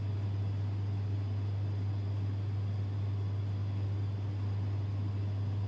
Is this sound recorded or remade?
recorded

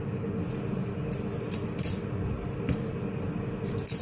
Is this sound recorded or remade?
recorded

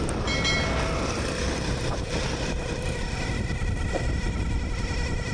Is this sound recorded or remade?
remade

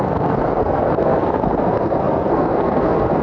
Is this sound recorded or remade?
remade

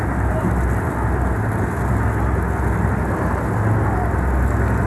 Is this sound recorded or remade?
recorded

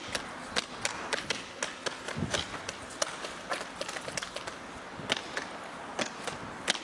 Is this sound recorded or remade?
recorded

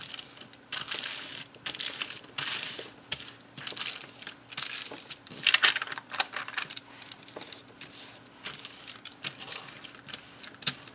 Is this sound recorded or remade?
remade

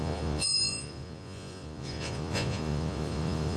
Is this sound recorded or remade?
remade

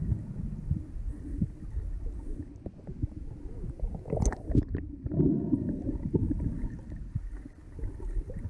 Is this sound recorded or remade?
recorded